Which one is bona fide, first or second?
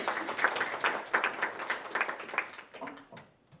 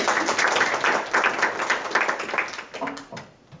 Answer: second